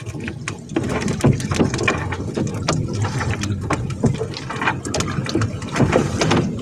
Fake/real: real